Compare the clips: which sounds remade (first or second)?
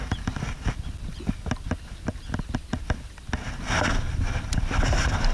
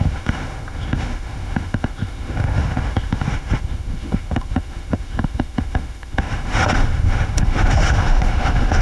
second